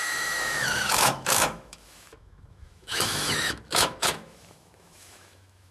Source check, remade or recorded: remade